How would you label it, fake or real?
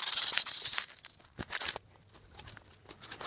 fake